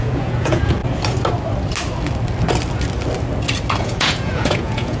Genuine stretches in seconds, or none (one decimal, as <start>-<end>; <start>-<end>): 0.8-3.8